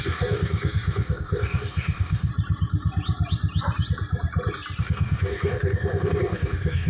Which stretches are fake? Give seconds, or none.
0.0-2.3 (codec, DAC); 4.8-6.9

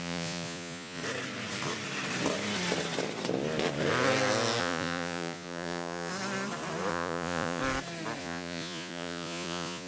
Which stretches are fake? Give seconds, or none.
0.0-1.0 (vocoder, Vocos); 4.6-6.1; 6.9-7.6; 8.2-9.9

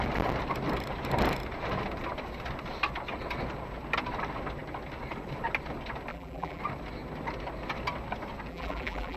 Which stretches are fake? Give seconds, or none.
6.1-6.6 (vocoder, BigVGAN v2); 8.5-9.2